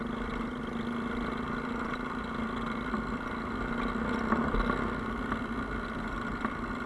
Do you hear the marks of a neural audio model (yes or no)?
no